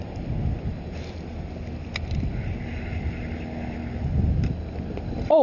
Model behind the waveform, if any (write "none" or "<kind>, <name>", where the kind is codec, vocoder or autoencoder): none